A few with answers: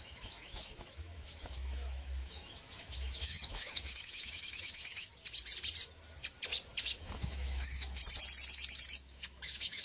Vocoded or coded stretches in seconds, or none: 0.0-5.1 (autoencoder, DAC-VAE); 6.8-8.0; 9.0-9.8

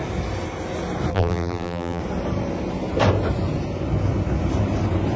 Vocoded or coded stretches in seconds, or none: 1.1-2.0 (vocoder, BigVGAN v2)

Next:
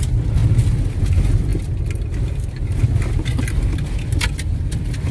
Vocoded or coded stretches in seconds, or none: none

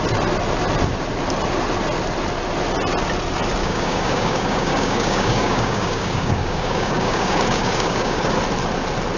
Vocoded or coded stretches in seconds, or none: 3.6-8.3 (codec, DAC)

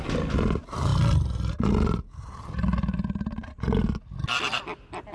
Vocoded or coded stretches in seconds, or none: none